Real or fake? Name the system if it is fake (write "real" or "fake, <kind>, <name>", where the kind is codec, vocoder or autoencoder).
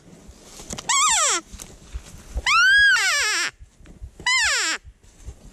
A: real